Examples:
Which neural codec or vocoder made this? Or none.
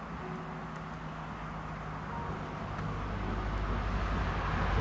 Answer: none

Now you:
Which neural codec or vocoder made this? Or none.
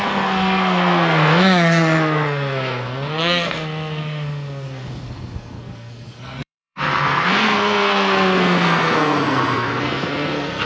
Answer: codec, SNAC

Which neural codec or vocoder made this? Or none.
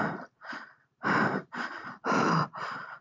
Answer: vocoder, BigVGAN v2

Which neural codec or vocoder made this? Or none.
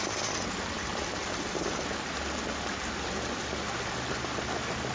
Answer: none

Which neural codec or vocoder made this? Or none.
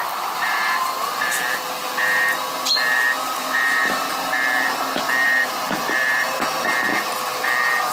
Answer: none